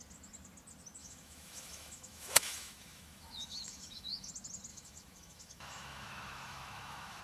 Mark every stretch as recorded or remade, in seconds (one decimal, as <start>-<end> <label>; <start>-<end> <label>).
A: 0.0-1.0 recorded; 1.0-4.3 remade; 4.3-4.7 recorded; 4.7-7.2 remade